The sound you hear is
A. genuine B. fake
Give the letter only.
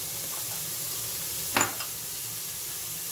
A